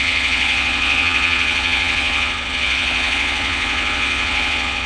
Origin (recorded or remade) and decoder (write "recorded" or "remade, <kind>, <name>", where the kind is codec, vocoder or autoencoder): remade, vocoder, Vocos